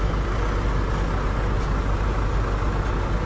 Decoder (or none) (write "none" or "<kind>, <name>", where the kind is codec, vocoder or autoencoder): none